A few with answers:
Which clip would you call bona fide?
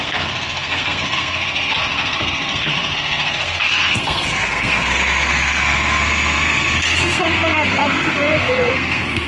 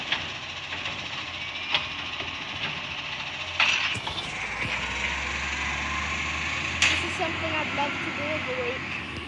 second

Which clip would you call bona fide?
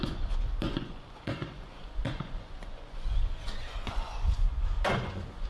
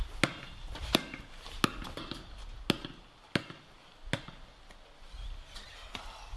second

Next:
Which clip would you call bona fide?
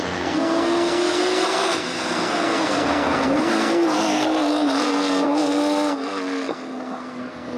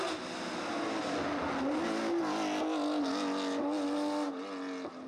second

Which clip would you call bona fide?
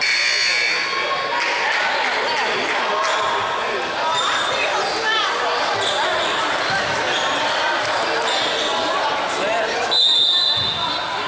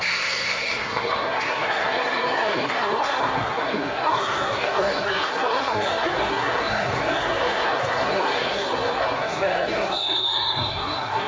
first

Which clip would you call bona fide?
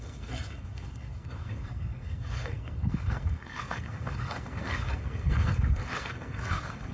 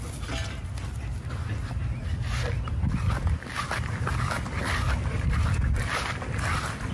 second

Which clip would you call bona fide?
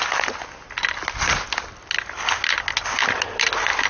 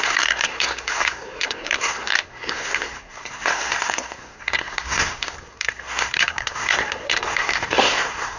first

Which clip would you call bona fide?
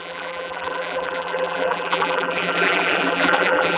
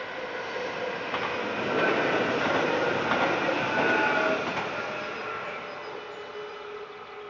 second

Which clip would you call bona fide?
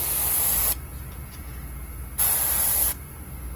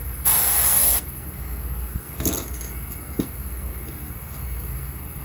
first